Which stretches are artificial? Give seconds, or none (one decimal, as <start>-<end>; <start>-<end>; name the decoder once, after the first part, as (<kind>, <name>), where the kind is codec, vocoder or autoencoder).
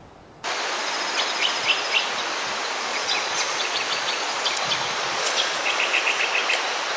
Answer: 2.9-4.5 (vocoder, Vocos); 4.9-6.0